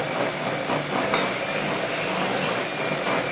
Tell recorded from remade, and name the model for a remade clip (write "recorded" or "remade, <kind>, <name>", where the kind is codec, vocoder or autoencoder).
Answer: recorded